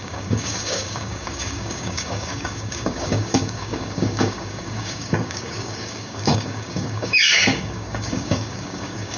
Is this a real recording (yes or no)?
no